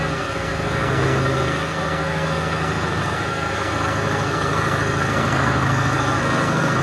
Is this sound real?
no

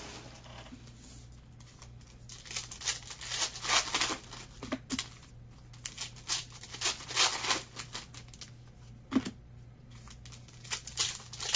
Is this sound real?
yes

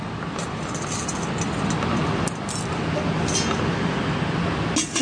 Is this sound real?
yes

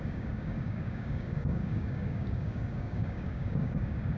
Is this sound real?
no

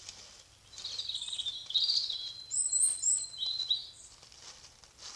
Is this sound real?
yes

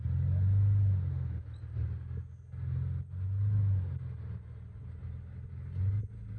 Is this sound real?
yes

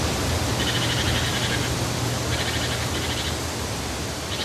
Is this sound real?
yes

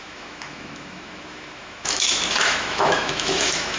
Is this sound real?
no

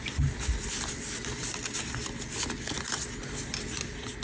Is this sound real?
yes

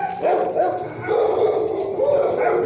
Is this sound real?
yes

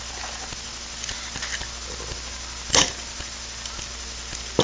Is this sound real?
yes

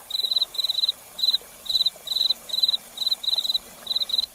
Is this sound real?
no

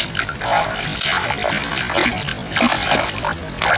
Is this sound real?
yes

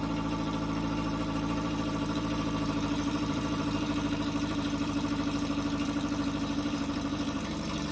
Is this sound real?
no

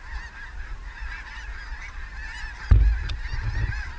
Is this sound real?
yes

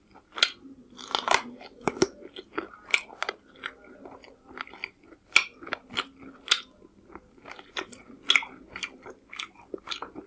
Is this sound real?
yes